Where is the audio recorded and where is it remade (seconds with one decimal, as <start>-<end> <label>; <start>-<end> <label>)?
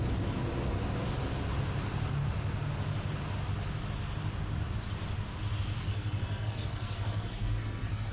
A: 0.0-5.8 recorded; 5.8-8.1 remade